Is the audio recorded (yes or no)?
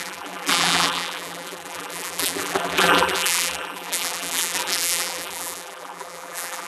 no